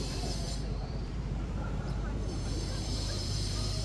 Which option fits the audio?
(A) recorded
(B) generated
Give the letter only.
B